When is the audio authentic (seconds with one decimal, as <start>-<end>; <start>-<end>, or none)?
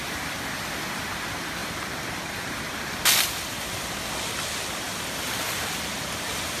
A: 0.0-6.6